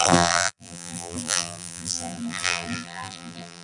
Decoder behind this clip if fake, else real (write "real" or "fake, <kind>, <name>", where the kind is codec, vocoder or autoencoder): fake, vocoder, BigVGAN v2